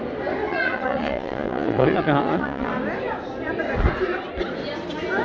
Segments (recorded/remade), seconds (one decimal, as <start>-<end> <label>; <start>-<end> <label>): 0.0-0.5 recorded; 0.5-2.7 remade; 2.7-5.2 recorded